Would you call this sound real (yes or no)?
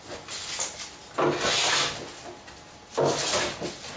yes